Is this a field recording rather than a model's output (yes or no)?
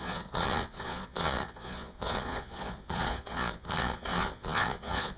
no